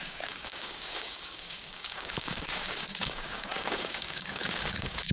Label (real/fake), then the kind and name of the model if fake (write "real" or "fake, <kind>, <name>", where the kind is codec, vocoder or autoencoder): fake, codec, DAC